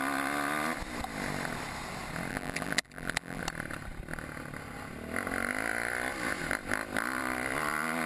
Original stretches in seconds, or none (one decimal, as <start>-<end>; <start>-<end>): 0.0-2.3; 3.4-8.1